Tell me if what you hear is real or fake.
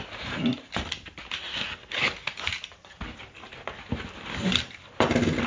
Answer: real